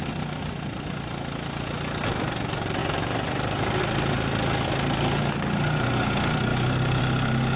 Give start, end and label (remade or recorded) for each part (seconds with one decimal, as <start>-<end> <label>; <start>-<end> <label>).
0.0-2.8 recorded; 2.8-3.8 remade; 3.8-7.6 recorded